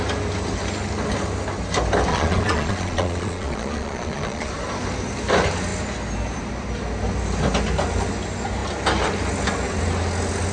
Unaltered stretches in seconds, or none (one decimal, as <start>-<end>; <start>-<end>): 0.0-2.1; 4.5-10.5